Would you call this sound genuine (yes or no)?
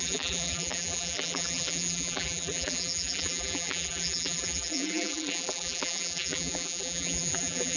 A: no